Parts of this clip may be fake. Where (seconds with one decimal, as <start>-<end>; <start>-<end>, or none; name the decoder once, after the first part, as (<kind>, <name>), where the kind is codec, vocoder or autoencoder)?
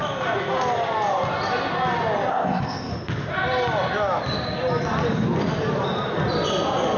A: 2.3-2.9 (codec, ZipCodec)